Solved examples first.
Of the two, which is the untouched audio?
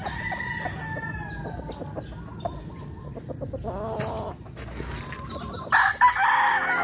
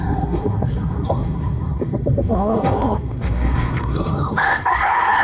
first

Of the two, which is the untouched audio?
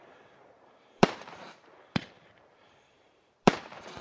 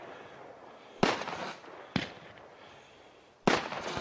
second